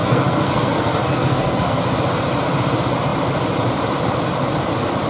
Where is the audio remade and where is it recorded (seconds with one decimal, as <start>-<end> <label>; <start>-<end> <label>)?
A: 0.0-1.8 remade; 1.8-5.1 recorded